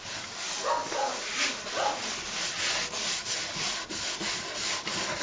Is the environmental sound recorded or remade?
recorded